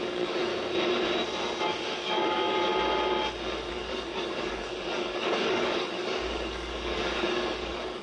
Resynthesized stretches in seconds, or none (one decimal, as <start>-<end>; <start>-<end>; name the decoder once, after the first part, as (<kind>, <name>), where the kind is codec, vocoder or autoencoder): 0.0-0.5 (codec, DAC); 1.6-2.7; 3.7-8.0